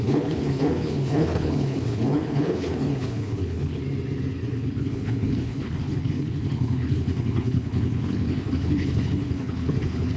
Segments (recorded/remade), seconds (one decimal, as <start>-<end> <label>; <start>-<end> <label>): 0.0-3.8 remade; 3.8-4.5 recorded; 4.5-10.2 remade